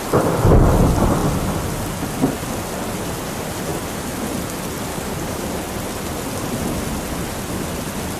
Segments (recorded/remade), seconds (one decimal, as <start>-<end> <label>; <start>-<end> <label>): 0.0-4.9 recorded; 4.9-5.5 remade; 5.5-8.2 recorded